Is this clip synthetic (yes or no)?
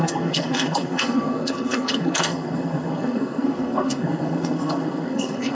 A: yes